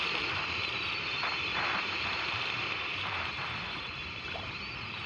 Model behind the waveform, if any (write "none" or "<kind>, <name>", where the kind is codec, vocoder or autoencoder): vocoder, BigVGAN v2